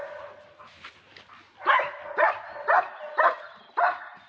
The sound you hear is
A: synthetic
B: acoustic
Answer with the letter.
B